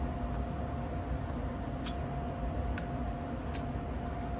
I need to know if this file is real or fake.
real